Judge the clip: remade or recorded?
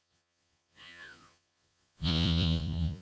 remade